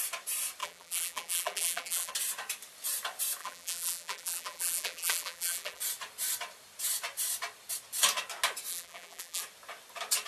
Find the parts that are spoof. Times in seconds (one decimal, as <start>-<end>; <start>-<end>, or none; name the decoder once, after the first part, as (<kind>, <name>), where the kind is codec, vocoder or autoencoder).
0.6-2.1 (vocoder, BigVGAN v2); 3.4-5.8; 8.7-9.4